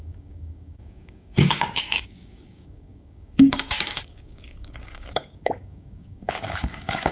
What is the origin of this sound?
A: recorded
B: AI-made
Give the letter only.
B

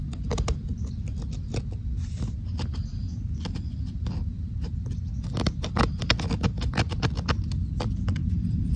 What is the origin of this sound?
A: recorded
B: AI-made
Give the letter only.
A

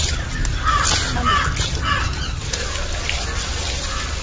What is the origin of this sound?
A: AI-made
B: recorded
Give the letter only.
B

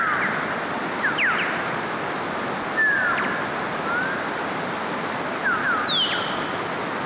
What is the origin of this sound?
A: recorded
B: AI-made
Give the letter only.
A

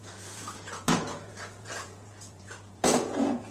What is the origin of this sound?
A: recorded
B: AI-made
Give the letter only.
B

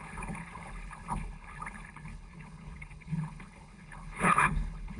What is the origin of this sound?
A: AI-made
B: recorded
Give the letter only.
A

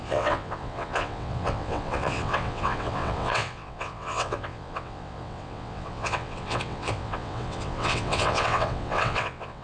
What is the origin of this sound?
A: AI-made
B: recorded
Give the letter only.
A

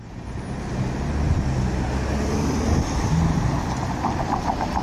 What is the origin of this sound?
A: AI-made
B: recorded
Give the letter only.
B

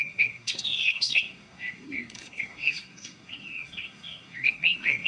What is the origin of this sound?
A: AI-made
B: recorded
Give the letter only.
A